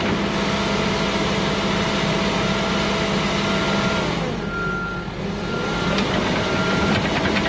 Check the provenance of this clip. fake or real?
real